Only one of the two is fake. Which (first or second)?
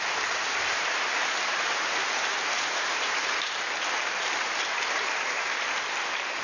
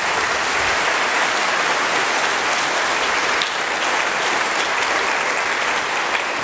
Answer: first